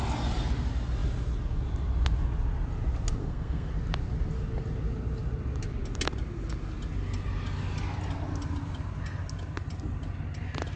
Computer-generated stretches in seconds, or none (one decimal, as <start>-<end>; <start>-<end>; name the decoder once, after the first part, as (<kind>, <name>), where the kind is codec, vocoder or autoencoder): 3.2-3.7 (codec, SNAC)